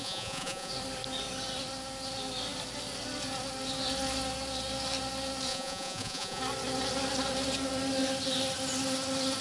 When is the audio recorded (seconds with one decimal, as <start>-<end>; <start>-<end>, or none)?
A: 0.7-5.5; 6.4-9.4